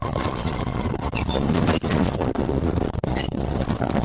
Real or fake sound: fake